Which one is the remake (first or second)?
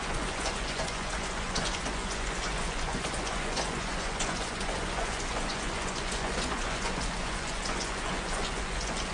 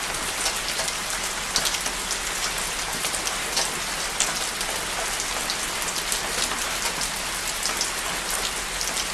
first